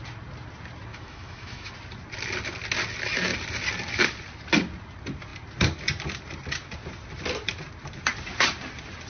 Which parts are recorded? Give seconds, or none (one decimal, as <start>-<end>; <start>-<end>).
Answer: 0.0-0.9; 1.7-9.1